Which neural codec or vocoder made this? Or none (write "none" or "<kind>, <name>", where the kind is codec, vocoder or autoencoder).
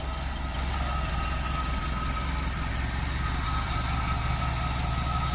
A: none